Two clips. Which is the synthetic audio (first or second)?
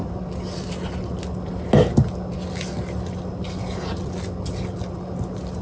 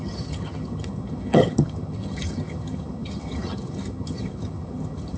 second